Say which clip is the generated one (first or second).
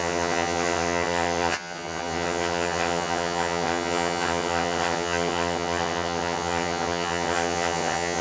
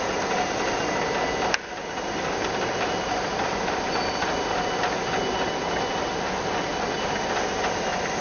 first